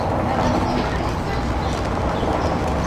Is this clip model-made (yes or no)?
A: no